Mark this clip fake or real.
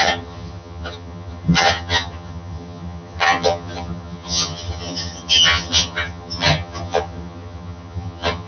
fake